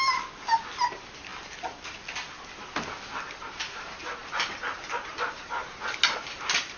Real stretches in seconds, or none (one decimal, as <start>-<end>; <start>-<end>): 0.0-6.8